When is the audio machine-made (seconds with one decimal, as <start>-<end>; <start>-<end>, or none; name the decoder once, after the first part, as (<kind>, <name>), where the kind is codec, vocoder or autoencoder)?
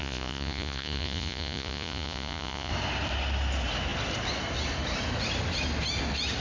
0.0-2.7 (vocoder, Vocos)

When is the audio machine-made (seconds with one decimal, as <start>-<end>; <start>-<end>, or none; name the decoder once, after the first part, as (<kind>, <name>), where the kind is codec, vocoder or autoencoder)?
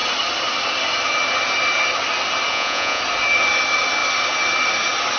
2.5-3.0 (vocoder, Vocos)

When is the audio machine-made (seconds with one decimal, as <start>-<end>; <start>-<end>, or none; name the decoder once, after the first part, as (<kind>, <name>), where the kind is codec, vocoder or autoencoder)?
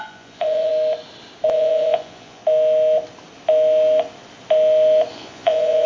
0.0-0.7 (vocoder, Vocos); 1.5-2.4; 5.1-5.9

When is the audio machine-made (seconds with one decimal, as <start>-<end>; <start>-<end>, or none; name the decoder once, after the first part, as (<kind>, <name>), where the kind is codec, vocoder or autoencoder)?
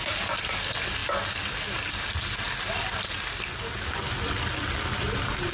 none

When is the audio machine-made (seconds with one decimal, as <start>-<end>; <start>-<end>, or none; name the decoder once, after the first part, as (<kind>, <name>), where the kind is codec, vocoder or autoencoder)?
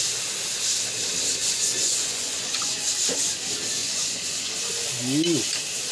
1.4-2.9 (vocoder, Vocos); 3.8-4.6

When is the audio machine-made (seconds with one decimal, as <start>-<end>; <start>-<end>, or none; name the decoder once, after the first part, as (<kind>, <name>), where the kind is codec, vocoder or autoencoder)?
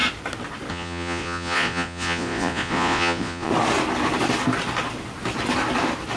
0.7-3.5 (vocoder, Vocos)